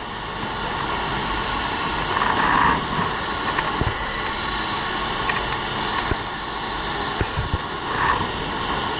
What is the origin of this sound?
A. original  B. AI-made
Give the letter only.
A